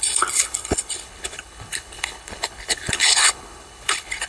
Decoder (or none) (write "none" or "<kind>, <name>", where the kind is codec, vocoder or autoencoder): codec, HILCodec